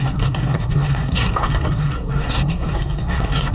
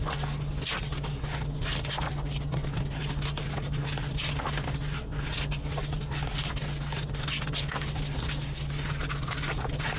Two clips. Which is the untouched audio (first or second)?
second